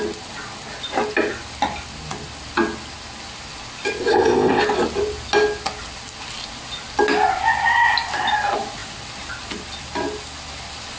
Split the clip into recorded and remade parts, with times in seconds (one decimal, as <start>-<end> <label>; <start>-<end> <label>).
0.0-4.1 recorded; 4.1-4.6 remade; 4.6-11.0 recorded